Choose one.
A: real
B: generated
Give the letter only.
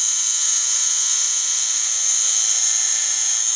A